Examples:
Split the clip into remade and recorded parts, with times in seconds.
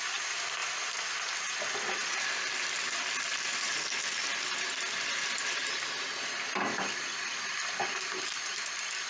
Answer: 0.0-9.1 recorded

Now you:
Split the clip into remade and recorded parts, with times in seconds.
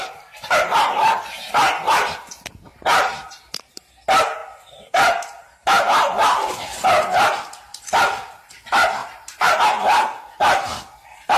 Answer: 0.0-2.7 recorded; 2.7-3.9 remade; 3.9-9.0 recorded; 9.0-9.6 remade; 9.6-11.4 recorded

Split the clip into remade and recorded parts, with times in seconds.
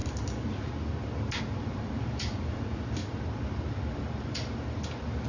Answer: 0.0-1.4 recorded; 1.4-3.0 remade; 3.0-5.3 recorded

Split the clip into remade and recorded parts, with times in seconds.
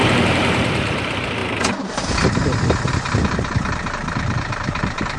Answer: 0.0-2.4 remade; 2.4-2.9 recorded; 2.9-5.2 remade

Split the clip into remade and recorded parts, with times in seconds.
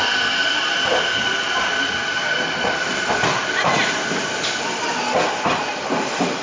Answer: 0.0-6.4 recorded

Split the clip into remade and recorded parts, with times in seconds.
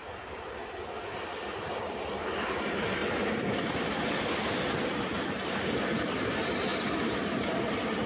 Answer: 0.0-0.6 remade; 0.6-1.8 recorded; 1.8-3.0 remade; 3.0-4.7 recorded; 4.7-6.7 remade; 6.7-8.1 recorded